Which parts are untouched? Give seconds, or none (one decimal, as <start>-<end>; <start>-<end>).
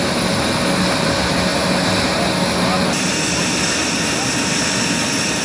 0.0-5.4